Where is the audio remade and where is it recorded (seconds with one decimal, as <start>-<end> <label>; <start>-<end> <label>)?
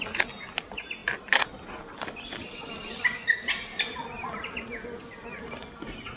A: 0.0-6.2 recorded